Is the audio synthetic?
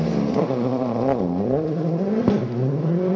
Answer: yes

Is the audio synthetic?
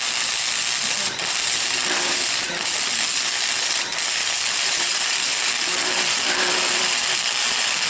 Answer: yes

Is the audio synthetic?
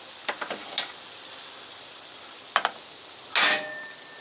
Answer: no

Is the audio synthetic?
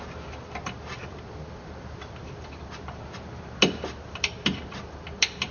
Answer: yes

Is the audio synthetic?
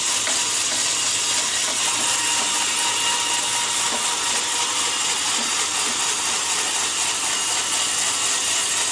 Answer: no